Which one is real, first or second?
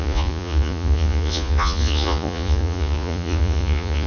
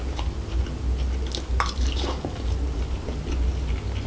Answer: second